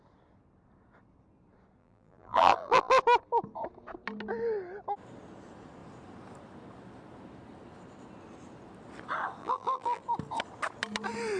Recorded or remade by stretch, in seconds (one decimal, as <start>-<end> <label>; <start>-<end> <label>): 0.0-1.8 recorded; 1.8-3.0 remade; 3.0-9.4 recorded; 9.4-10.0 remade; 10.0-11.4 recorded